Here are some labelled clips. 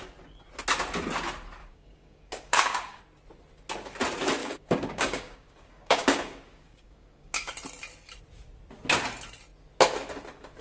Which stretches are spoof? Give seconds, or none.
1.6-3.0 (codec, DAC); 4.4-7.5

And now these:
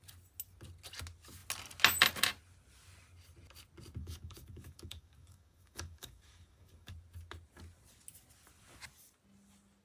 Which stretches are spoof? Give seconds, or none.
4.0-6.9 (codec, DAC)

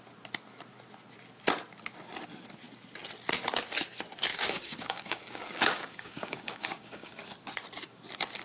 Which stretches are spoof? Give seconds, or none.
4.3-7.1 (codec, DAC)

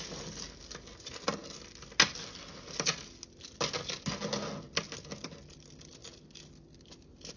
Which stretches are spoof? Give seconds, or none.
none